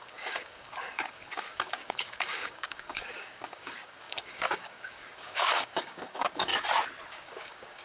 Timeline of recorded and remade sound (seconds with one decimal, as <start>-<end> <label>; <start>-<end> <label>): 0.0-6.5 remade; 6.5-7.1 recorded; 7.1-7.8 remade